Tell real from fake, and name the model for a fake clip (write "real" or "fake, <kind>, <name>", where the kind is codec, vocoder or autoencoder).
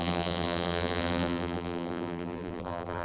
fake, vocoder, BigVGAN v2